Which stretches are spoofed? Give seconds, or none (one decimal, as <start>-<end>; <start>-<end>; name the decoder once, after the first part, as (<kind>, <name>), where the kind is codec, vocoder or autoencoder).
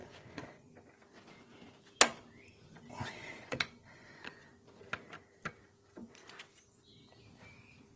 0.0-0.7 (vocoder, Vocos); 2.6-4.5